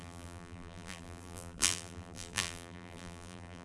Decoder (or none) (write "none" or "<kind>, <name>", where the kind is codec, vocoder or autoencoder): vocoder, BigVGAN v2